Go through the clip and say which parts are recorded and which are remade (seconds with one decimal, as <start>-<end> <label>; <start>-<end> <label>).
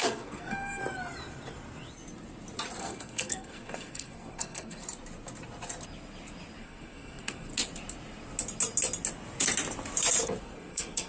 0.0-0.8 remade; 0.8-2.8 recorded; 2.8-4.8 remade; 4.8-6.6 recorded; 6.6-7.5 remade; 7.5-10.4 recorded; 10.4-11.1 remade